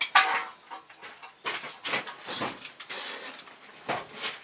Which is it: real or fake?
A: real